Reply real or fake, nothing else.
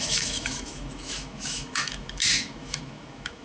fake